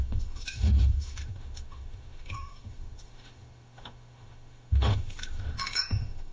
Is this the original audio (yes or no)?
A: no